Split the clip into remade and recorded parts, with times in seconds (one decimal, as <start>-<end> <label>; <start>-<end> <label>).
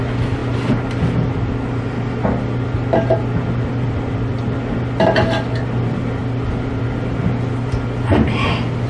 0.0-8.9 recorded